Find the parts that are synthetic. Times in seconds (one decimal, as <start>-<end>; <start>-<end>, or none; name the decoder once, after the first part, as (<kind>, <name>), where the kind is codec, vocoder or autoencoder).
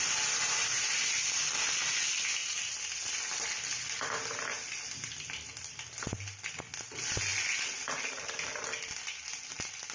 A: none